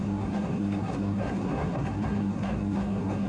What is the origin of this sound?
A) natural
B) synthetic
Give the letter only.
B